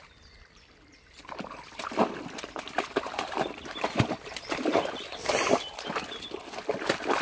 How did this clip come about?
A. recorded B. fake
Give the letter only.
A